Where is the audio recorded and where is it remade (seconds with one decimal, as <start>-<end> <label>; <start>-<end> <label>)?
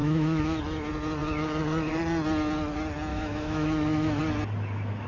0.0-0.6 remade; 0.6-3.1 recorded; 3.1-4.2 remade; 4.2-5.1 recorded